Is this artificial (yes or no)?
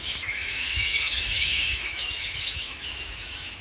yes